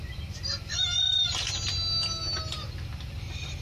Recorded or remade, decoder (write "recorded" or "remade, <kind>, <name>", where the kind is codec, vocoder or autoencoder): recorded